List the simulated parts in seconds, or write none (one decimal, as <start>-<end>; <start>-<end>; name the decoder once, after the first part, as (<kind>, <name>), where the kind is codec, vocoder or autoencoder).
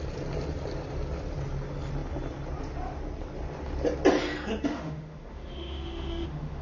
4.6-6.6 (autoencoder, DAC-VAE)